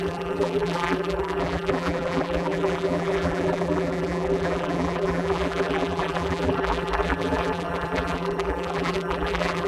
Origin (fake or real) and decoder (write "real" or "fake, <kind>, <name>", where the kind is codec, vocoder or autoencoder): fake, vocoder, BigVGAN v2